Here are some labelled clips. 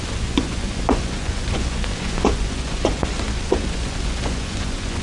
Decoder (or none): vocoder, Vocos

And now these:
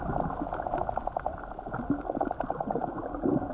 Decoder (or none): none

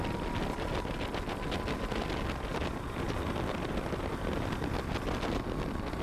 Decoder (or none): none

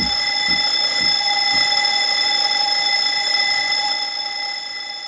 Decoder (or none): vocoder, Vocos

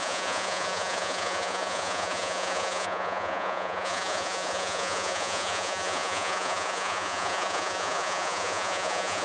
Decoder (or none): vocoder, Vocos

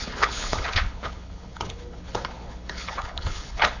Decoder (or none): codec, HILCodec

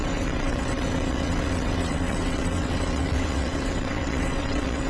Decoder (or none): vocoder, WaveNeXt